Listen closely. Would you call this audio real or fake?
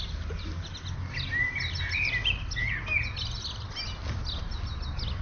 real